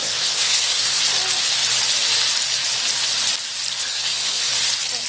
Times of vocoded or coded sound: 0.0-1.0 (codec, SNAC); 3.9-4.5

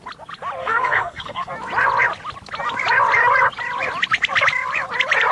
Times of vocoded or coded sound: 0.6-1.5 (codec, SNAC)

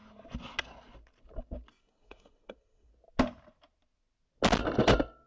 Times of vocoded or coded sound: 1.7-2.9 (codec, SNAC)